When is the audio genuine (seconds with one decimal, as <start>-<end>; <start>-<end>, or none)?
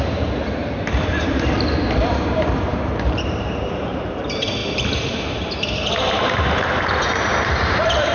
none